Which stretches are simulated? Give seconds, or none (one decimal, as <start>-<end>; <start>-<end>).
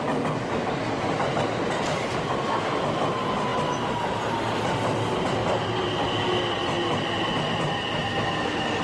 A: none